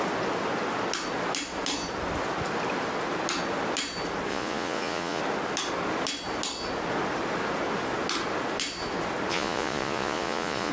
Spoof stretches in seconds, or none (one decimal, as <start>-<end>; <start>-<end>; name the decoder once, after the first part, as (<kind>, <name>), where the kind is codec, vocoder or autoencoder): 4.3-5.2 (vocoder, Vocos); 9.3-10.7

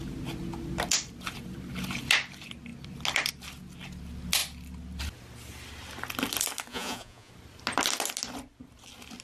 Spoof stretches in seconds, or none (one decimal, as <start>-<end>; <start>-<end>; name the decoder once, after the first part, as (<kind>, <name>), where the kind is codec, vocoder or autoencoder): 6.7-7.3 (vocoder, Vocos)

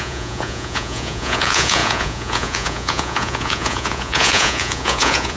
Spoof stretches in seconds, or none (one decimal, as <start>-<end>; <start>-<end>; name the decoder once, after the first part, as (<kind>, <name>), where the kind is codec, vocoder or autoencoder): 0.0-5.4 (vocoder, Vocos)

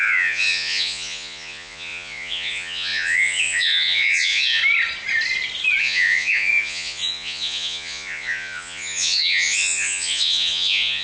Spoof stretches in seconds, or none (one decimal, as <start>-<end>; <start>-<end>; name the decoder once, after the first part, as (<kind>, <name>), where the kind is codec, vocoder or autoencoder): 0.0-4.6 (vocoder, Vocos); 5.8-11.0

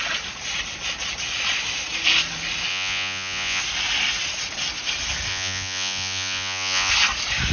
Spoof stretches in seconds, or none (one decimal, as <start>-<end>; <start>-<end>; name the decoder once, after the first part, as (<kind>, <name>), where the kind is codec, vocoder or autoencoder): 2.7-3.6 (vocoder, Vocos); 5.3-6.9